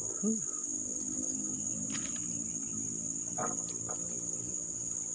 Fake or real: real